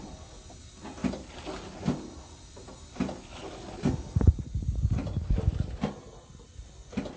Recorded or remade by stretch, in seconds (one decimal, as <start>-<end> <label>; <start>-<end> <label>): 0.0-7.2 recorded